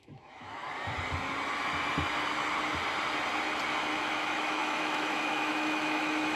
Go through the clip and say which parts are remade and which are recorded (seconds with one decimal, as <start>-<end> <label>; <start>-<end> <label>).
0.0-0.6 remade; 0.6-3.9 recorded; 3.9-6.4 remade